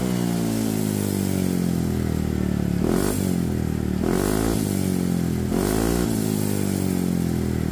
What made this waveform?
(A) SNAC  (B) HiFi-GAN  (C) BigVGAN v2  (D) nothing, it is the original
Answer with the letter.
D